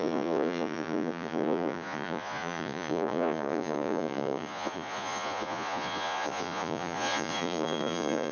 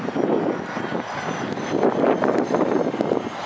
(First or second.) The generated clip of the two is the first